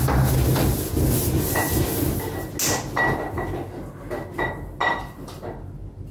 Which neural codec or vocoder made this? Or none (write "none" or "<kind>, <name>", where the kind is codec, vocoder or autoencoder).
none